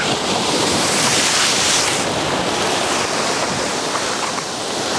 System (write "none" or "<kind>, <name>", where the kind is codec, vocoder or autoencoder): vocoder, BigVGAN v2